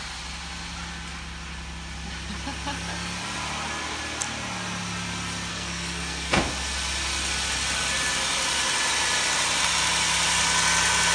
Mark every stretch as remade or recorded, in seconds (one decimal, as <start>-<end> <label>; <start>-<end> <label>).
0.0-5.5 recorded; 5.5-6.4 remade; 6.4-11.1 recorded